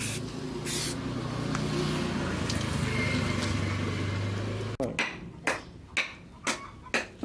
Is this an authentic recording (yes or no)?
yes